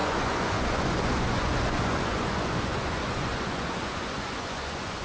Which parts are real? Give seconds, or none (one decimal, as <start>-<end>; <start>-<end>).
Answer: none